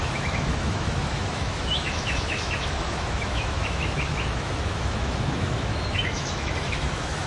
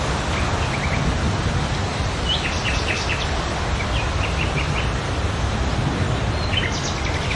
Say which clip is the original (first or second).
second